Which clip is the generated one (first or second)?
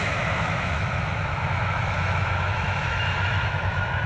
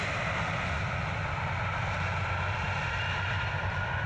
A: first